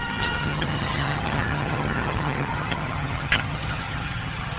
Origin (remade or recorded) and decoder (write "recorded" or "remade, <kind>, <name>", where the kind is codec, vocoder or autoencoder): remade, vocoder, HiFi-GAN